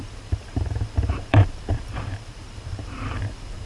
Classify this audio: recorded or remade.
remade